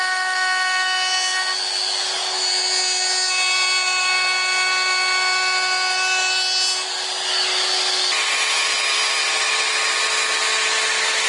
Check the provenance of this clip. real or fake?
real